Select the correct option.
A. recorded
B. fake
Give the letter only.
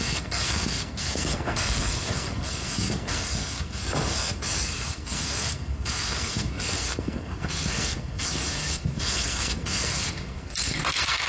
B